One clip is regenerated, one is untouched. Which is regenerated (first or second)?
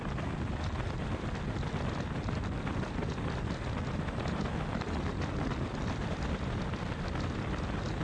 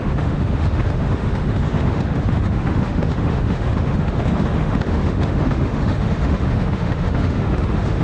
second